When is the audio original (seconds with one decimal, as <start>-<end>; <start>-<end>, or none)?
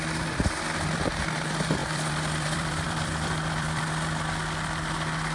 0.0-1.8; 3.9-5.3